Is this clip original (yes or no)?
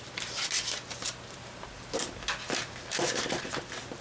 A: yes